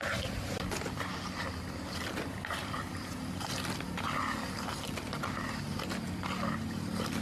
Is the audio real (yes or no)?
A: yes